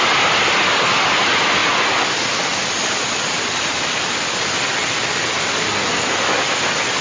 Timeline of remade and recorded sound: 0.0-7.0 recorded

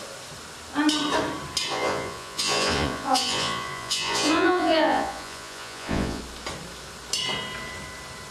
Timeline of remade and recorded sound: 0.0-1.7 recorded; 1.7-6.2 remade; 6.2-8.3 recorded

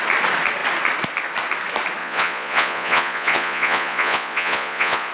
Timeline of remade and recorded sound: 0.0-2.0 recorded; 2.0-5.1 remade

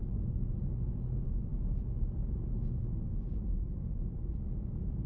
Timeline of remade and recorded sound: 0.0-0.7 remade; 0.7-5.1 recorded